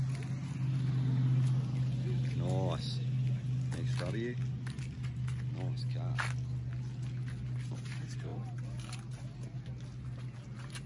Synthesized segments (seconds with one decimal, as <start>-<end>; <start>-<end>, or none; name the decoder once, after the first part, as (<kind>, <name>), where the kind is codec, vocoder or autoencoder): none